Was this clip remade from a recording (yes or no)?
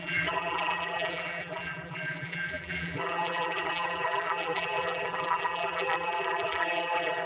yes